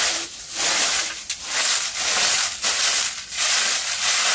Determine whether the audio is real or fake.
real